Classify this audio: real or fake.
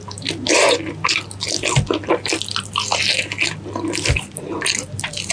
real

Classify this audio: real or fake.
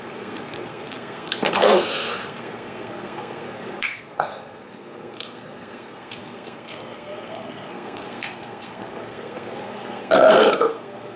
fake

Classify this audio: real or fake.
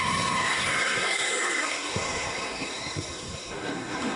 fake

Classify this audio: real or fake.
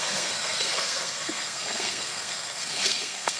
fake